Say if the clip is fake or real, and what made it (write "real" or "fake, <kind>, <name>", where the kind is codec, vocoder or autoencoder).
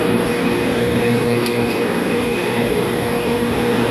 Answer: fake, codec, DAC